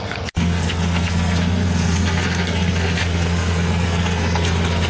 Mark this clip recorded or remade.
remade